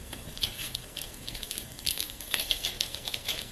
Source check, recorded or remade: remade